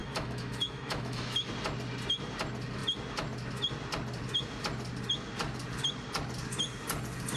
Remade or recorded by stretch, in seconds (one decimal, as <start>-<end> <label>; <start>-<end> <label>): 0.0-1.5 remade; 1.5-7.4 recorded